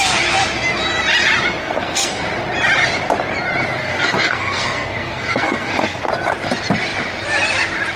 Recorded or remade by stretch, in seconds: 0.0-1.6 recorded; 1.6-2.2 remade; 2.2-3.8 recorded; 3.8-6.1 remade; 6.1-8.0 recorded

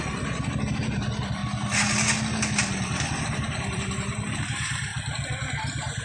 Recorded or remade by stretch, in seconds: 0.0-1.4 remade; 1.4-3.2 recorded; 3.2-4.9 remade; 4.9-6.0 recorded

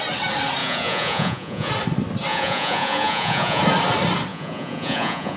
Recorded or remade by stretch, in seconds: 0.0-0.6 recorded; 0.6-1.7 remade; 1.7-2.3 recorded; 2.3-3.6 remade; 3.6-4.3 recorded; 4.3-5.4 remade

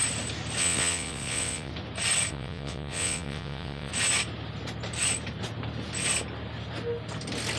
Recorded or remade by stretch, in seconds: 0.0-0.6 recorded; 0.6-1.7 remade; 1.7-2.3 recorded; 2.3-3.9 remade; 3.9-7.6 recorded

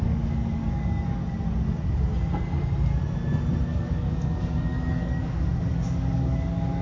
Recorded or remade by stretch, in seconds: 0.0-1.2 remade; 1.2-3.7 recorded; 3.7-6.8 remade

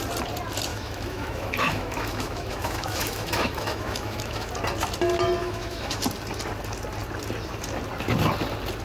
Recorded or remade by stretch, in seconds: 0.0-0.7 recorded; 0.7-4.5 remade; 4.5-5.4 recorded; 5.4-6.0 remade; 6.0-8.8 recorded

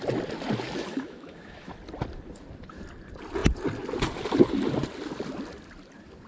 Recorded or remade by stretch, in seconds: 0.0-0.9 recorded; 0.9-1.7 remade; 1.7-6.3 recorded

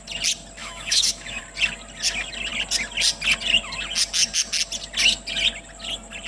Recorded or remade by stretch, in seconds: 0.0-0.6 recorded; 0.6-1.4 remade; 1.4-6.3 recorded